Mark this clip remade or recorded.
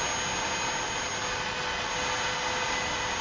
recorded